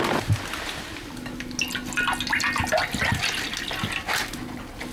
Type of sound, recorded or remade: recorded